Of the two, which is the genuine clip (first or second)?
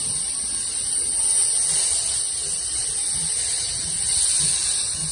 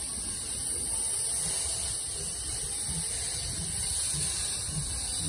first